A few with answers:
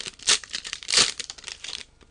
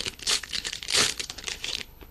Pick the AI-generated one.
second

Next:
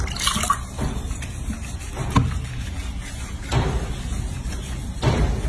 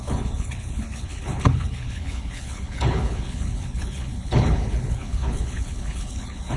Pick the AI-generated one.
second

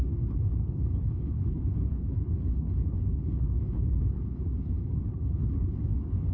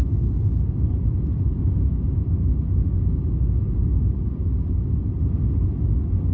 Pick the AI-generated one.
first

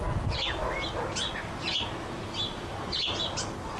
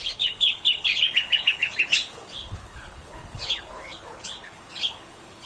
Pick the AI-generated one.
second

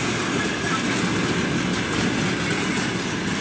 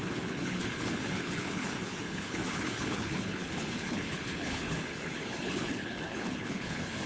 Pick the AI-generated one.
second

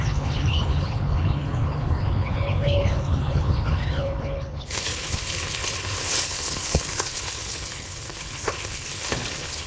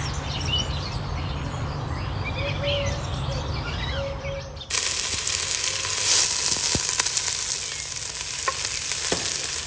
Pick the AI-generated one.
first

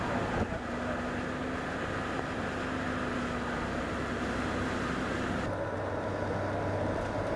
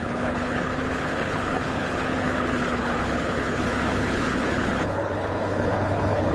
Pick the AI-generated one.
second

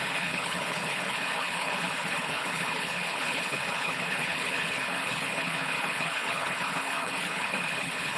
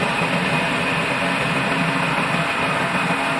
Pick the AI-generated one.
first